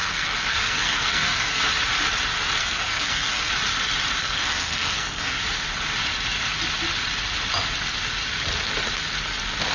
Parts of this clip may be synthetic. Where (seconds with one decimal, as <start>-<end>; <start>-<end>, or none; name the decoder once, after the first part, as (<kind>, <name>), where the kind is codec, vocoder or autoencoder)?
0.0-1.6 (codec, SNAC); 2.6-3.5; 4.2-5.4

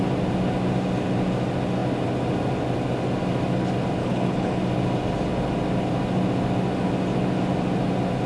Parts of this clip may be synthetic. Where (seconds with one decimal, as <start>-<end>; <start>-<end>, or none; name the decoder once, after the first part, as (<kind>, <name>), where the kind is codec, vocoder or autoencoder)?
4.0-4.6 (codec, HILCodec)

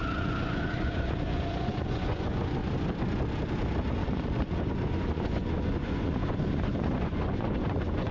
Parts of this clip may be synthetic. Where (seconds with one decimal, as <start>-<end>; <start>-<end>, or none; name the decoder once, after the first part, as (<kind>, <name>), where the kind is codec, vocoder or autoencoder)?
0.0-2.6 (vocoder, Vocos); 3.9-8.1

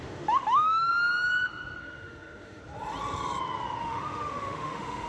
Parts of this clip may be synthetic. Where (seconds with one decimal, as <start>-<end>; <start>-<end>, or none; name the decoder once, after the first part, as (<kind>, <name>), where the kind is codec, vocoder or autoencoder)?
0.0-0.9 (autoencoder, DAC-VAE); 1.8-2.6; 3.8-5.1

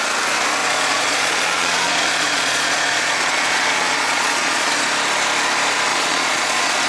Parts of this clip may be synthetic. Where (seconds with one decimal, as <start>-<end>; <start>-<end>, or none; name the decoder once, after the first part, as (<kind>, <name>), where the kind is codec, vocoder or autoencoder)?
0.6-4.7 (vocoder, Vocos); 5.9-6.9

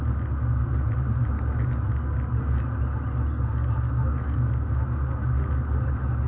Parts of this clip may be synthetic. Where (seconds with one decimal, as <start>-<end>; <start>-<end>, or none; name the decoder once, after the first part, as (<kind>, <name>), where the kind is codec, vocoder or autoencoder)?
3.3-4.7 (codec, DAC)

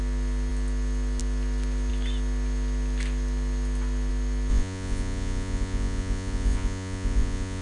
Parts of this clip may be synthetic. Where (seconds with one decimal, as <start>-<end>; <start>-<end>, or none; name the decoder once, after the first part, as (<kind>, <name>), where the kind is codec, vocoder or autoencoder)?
4.5-7.6 (vocoder, Vocos)